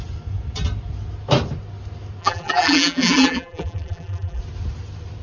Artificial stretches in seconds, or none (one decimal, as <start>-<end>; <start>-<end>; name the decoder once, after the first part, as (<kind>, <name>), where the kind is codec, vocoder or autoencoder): 2.2-4.4 (vocoder, BigVGAN v2)